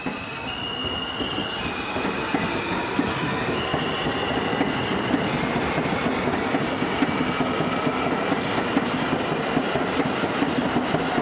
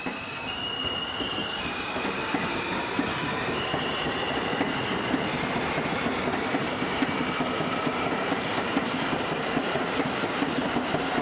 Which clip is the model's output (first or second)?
second